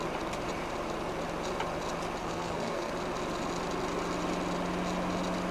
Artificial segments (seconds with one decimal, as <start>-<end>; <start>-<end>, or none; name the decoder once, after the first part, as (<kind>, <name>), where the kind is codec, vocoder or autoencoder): 2.2-2.9 (codec, SNAC)

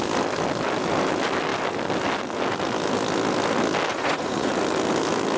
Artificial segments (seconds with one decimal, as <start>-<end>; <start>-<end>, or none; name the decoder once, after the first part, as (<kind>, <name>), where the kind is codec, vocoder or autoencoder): 3.9-4.5 (vocoder, Vocos)

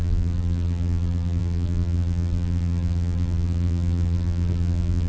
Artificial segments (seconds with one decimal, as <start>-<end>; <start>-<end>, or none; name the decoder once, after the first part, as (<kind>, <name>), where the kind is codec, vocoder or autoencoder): 0.0-5.1 (vocoder, BigVGAN v2)

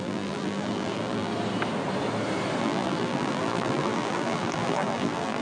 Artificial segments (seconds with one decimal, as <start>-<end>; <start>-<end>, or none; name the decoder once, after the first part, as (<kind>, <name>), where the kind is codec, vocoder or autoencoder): 0.0-1.3 (vocoder, BigVGAN v2); 2.6-5.4

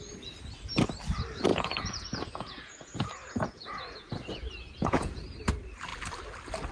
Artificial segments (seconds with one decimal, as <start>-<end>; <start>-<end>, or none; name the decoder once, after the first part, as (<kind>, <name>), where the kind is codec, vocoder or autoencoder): 1.5-5.1 (vocoder, Vocos)

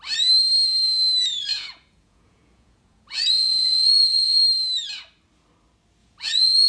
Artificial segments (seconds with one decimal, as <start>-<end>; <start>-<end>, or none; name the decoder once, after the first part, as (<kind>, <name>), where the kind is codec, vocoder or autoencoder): 1.5-4.4 (vocoder, Vocos); 6.0-6.7

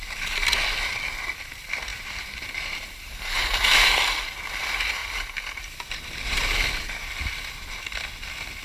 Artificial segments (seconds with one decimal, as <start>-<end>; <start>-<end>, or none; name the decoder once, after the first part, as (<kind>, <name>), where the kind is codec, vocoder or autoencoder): 1.9-4.0 (vocoder, BigVGAN v2); 5.0-5.6